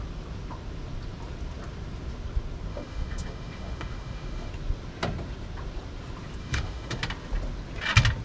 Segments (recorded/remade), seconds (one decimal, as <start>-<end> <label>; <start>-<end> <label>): 0.0-2.7 recorded; 2.7-4.5 remade; 4.5-6.4 recorded; 6.4-7.0 remade; 7.0-8.2 recorded